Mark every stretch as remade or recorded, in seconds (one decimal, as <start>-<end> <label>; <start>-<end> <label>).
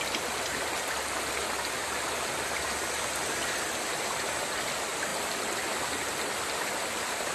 0.0-7.3 recorded